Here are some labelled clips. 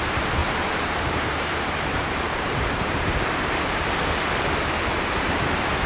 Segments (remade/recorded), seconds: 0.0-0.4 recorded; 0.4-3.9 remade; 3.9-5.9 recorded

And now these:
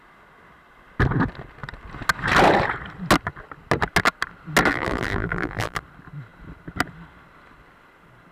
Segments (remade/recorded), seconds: 0.0-4.7 recorded; 4.7-5.8 remade; 5.8-8.3 recorded

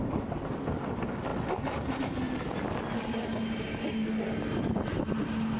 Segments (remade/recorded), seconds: 0.0-5.6 recorded

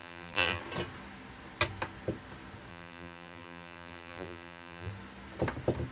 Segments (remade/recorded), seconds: 0.0-0.6 remade; 0.6-2.7 recorded; 2.7-4.9 remade; 4.9-5.9 recorded

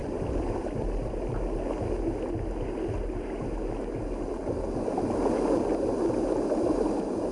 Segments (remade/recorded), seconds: 0.0-1.6 remade; 1.6-7.3 recorded